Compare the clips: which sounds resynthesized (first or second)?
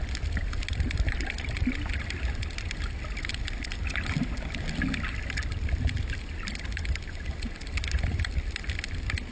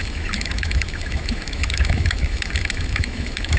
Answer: second